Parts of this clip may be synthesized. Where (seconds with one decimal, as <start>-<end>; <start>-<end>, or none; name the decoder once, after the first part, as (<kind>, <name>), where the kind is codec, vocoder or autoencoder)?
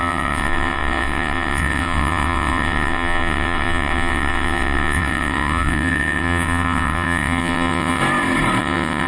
0.0-8.0 (vocoder, WaveNeXt); 8.6-9.1